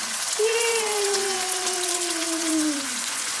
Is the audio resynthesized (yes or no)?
yes